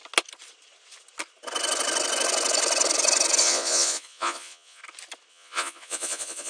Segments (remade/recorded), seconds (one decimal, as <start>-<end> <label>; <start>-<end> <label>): 0.0-3.4 recorded; 3.4-4.8 remade; 4.8-5.3 recorded; 5.3-6.5 remade